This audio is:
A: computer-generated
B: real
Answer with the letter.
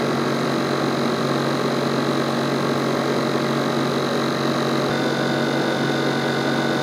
B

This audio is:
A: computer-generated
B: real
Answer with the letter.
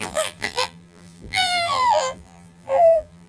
A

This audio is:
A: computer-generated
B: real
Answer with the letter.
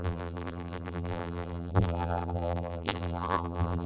A